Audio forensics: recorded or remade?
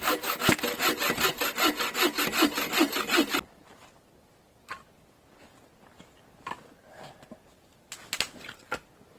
recorded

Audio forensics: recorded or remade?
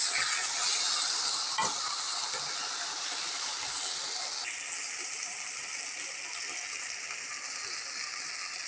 recorded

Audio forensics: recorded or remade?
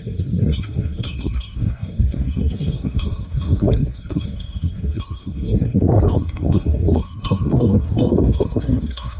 remade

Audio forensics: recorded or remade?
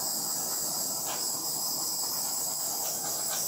recorded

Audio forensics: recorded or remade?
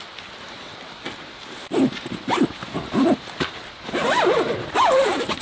remade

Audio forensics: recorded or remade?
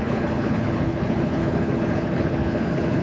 remade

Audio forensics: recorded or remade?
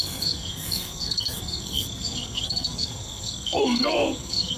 remade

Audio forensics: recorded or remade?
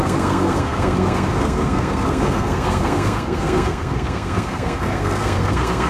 remade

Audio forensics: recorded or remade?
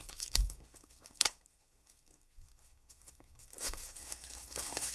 remade